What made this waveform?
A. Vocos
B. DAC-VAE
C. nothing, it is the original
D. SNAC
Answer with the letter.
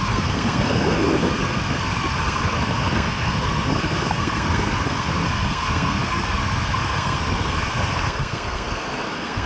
D